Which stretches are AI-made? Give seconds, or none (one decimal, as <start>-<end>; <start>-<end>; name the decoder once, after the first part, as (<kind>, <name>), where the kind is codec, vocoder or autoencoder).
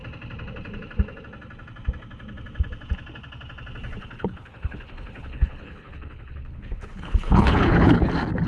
4.0-8.1 (codec, HILCodec)